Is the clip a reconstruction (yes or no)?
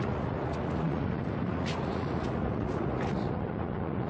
yes